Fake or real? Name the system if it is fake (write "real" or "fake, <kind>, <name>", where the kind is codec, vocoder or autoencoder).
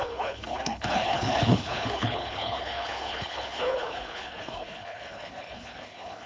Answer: fake, codec, HILCodec